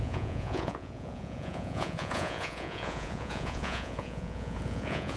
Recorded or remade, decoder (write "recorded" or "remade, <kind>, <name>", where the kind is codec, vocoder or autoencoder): remade, vocoder, Vocos